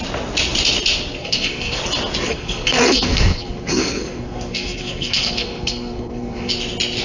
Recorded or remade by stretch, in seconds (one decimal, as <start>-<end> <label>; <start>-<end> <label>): 0.0-1.2 recorded; 1.2-1.8 remade; 1.8-2.3 recorded; 2.3-6.5 remade; 6.5-7.0 recorded